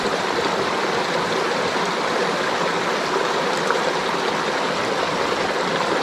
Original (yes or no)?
yes